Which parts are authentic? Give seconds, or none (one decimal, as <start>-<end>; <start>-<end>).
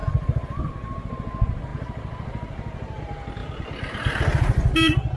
0.7-3.4; 4.2-5.2